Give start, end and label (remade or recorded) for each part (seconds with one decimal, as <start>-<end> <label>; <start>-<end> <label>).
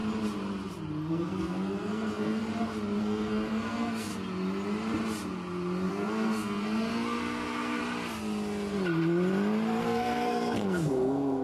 0.0-1.1 recorded; 1.1-2.4 remade; 2.4-3.0 recorded; 3.0-4.1 remade; 4.1-5.9 recorded; 5.9-7.8 remade; 7.8-9.8 recorded; 9.8-11.4 remade